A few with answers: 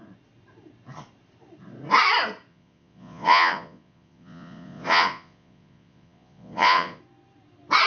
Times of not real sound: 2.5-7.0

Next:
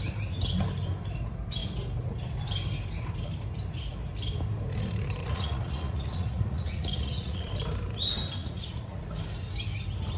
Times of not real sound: 5.2-7.5; 8.4-9.0

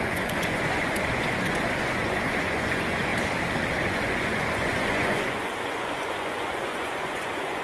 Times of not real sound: 0.0-3.1; 3.8-7.6

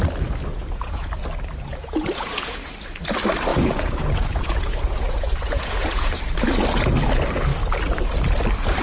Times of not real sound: 0.5-1.1; 1.7-2.7; 3.5-6.1

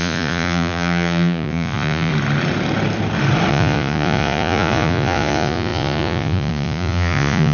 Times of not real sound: 0.0-2.1; 3.5-7.5

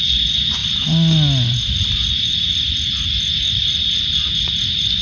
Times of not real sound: none

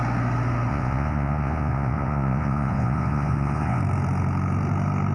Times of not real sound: 0.7-3.8

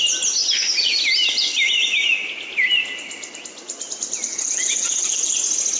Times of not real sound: 4.3-5.3